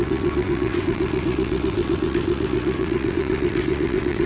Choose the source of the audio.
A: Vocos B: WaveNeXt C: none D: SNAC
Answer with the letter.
B